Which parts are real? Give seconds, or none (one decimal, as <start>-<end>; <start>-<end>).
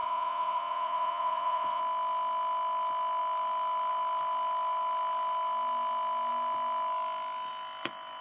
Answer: 1.8-8.2